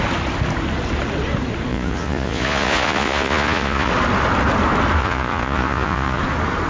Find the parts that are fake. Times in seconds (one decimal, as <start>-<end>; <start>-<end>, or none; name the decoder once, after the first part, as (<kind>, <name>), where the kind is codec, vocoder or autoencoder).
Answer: 1.7-3.9 (vocoder, Vocos); 5.0-6.2